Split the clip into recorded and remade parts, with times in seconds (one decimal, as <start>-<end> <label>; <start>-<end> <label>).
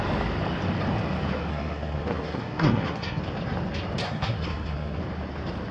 0.0-1.5 recorded; 1.5-3.2 remade; 3.2-4.0 recorded; 4.0-5.0 remade; 5.0-5.7 recorded